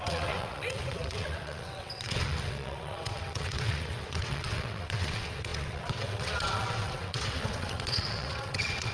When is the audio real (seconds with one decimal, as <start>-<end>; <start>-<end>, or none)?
none